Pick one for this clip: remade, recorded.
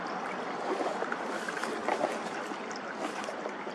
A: remade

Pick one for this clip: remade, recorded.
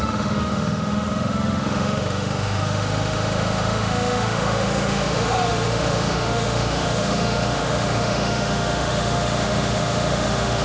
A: remade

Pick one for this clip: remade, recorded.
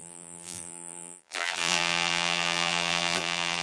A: remade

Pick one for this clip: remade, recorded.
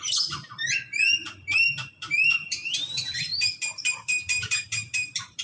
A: remade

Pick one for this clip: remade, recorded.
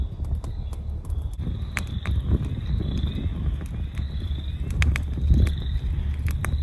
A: recorded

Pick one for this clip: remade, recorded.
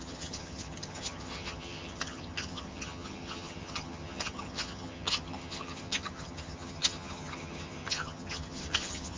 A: remade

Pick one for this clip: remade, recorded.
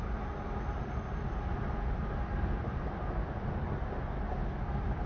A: recorded